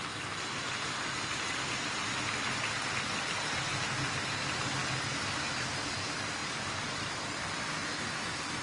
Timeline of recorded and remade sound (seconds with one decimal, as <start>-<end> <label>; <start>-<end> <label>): 0.0-6.4 recorded; 6.4-7.1 remade; 7.1-8.6 recorded